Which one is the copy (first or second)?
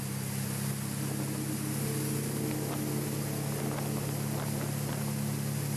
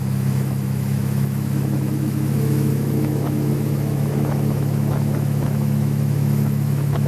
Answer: second